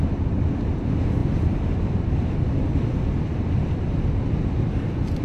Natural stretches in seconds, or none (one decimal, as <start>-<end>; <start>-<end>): 0.0-5.2